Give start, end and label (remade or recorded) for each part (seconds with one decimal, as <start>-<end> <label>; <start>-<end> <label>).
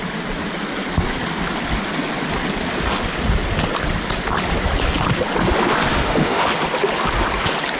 0.0-5.9 recorded; 5.9-6.5 remade; 6.5-7.8 recorded